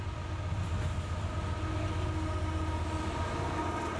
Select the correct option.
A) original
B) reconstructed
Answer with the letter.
A